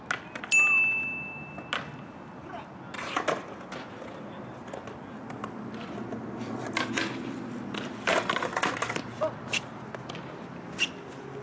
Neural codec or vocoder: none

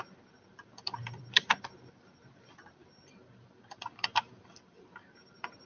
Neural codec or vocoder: vocoder, BigVGAN v2